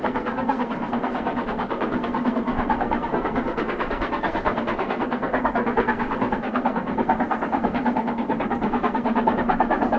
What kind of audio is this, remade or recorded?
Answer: remade